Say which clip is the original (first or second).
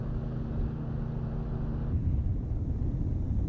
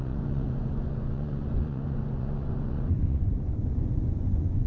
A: first